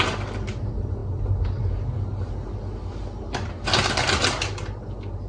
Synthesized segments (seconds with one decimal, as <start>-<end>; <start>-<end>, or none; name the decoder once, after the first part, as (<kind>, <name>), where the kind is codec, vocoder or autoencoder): none